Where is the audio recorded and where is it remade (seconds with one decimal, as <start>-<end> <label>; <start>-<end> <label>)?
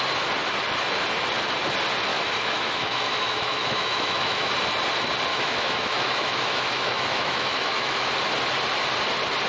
0.0-2.1 recorded; 2.1-4.5 remade; 4.5-5.3 recorded; 5.3-8.1 remade; 8.1-9.5 recorded